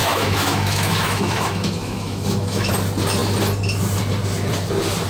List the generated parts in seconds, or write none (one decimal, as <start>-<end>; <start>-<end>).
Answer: 0.0-2.7